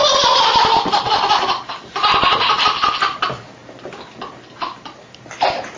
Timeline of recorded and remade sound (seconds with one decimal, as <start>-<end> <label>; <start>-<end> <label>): 0.0-5.8 recorded